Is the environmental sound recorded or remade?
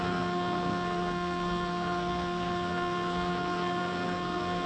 remade